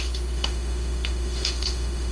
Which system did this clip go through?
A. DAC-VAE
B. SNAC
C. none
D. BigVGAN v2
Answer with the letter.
A